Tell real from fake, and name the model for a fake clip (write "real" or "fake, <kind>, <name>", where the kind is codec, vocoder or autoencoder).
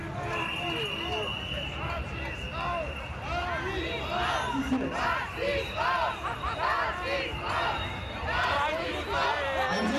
real